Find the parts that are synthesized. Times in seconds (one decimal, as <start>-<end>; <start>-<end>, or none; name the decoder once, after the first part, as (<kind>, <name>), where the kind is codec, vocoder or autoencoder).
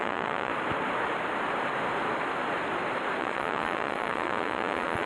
0.0-0.5 (vocoder, Vocos); 3.2-5.1